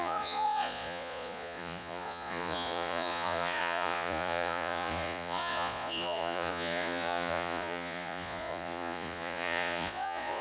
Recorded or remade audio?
remade